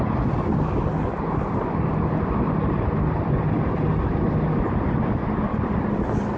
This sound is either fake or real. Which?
real